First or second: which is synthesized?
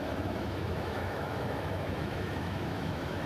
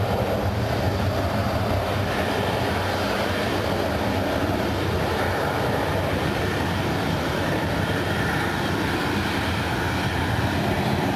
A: first